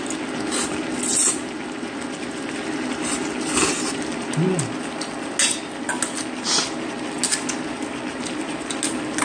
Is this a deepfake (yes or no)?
no